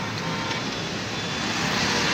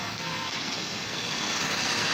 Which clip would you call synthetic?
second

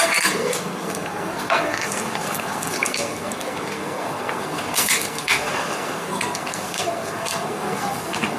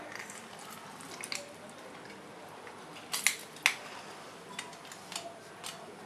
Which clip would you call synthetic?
first